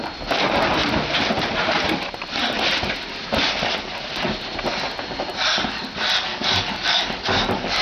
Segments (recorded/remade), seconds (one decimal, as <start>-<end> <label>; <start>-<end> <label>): 0.0-6.3 recorded; 6.3-7.8 remade